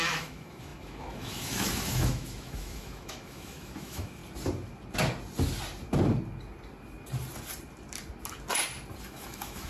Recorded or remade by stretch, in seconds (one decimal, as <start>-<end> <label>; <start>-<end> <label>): 0.0-4.2 remade; 4.2-9.0 recorded; 9.0-9.7 remade